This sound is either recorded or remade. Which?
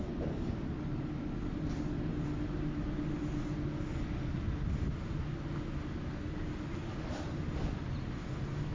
recorded